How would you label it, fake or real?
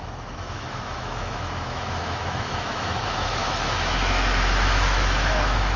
fake